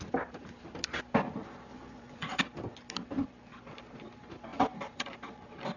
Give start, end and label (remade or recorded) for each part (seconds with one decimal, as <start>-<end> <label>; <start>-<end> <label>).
0.0-1.7 recorded; 1.7-2.4 remade; 2.4-5.8 recorded